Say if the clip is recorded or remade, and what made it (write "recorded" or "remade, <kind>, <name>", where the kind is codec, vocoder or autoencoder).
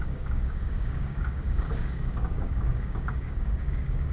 remade, codec, DAC